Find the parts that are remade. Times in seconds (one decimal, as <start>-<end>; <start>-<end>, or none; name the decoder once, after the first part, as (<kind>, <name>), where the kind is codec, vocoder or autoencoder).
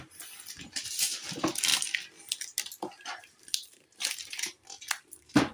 none